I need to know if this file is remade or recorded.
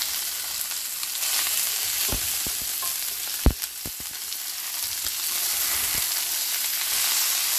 recorded